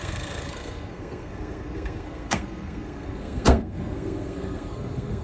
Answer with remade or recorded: remade